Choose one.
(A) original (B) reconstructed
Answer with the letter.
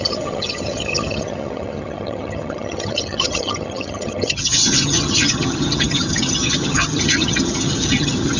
B